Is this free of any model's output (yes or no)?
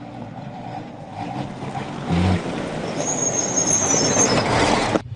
yes